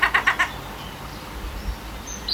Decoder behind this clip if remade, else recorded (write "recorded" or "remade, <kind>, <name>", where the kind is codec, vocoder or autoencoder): recorded